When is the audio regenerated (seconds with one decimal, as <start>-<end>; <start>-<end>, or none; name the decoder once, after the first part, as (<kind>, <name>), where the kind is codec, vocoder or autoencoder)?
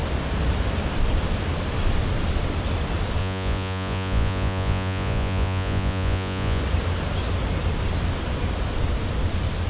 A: 3.2-6.6 (vocoder, Vocos)